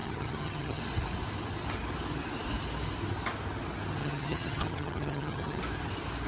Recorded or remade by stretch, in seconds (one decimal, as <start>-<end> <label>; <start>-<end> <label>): 0.0-0.8 remade; 0.8-4.0 recorded; 4.0-5.6 remade; 5.6-6.3 recorded